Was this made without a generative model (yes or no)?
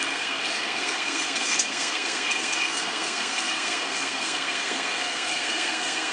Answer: no